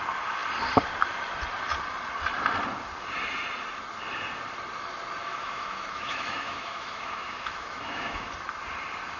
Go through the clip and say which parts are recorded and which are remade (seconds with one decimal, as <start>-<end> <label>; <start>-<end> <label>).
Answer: 0.0-5.2 recorded; 5.2-8.3 remade; 8.3-9.2 recorded